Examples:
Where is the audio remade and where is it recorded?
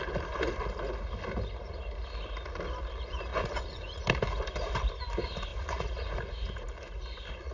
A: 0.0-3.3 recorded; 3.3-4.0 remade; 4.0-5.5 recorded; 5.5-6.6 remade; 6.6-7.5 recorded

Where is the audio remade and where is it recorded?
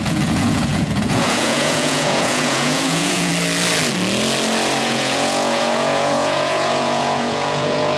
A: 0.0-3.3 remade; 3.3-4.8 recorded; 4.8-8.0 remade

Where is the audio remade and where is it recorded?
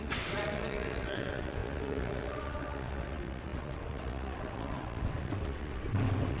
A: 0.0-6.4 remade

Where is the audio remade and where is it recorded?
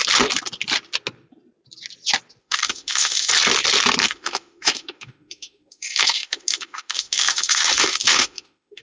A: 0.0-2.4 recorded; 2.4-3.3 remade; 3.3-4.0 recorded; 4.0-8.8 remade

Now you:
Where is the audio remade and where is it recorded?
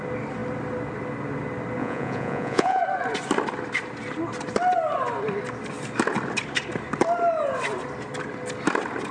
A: 0.0-1.8 recorded; 1.8-2.8 remade; 2.8-9.1 recorded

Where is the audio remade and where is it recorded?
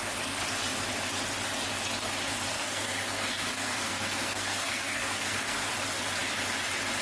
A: 0.0-2.5 recorded; 2.5-5.7 remade; 5.7-7.0 recorded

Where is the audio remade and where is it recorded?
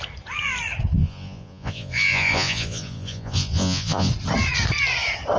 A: 0.0-1.0 recorded; 1.0-4.1 remade; 4.1-5.4 recorded